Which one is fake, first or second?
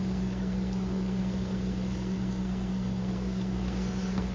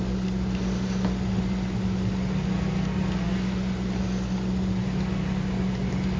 first